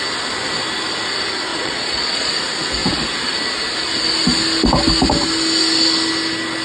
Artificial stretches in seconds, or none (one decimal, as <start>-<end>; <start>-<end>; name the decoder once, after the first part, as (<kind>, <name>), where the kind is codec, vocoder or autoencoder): 1.5-2.3 (vocoder, Vocos)